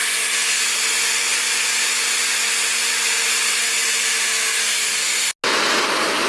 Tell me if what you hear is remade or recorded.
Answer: recorded